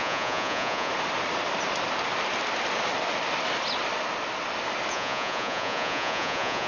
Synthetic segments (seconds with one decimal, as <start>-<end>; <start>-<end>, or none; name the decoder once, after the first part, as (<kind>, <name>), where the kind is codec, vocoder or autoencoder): 0.0-0.9 (vocoder, Vocos); 4.9-6.7